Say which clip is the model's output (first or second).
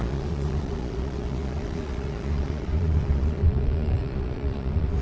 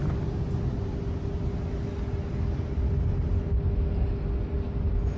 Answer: first